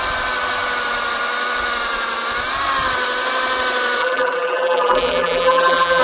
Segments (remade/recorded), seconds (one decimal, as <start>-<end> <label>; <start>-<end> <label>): 0.0-4.0 recorded; 4.0-6.0 remade